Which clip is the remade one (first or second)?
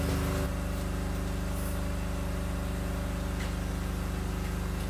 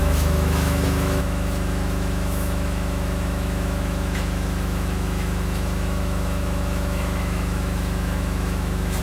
second